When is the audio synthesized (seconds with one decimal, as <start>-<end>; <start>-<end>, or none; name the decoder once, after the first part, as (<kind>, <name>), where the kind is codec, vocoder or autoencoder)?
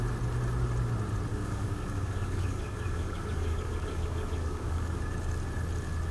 1.3-5.0 (codec, DAC)